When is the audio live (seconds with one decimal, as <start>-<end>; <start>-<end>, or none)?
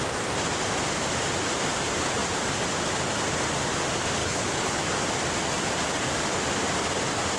0.0-4.2; 4.8-7.4